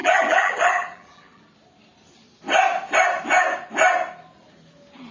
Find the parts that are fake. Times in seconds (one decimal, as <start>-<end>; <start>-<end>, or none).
0.0-1.4